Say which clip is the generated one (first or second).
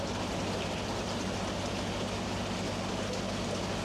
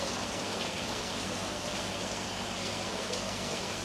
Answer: second